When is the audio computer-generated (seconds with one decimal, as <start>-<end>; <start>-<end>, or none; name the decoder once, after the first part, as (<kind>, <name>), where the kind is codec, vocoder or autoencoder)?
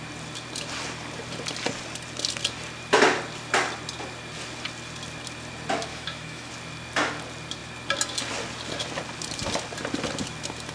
5.9-6.5 (autoencoder, DAC-VAE)